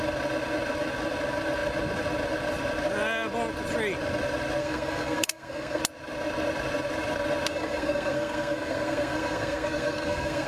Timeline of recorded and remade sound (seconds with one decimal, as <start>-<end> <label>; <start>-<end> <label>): 0.0-4.6 recorded; 4.6-5.8 remade; 5.8-7.5 recorded; 7.5-10.5 remade